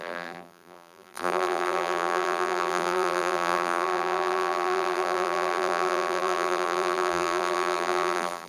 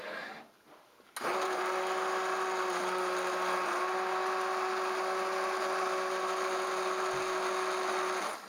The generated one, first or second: first